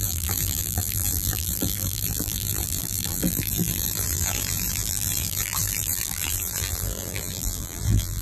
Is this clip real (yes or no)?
no